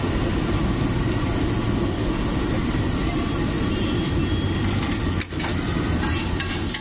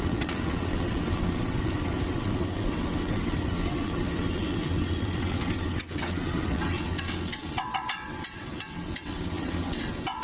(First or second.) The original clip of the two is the first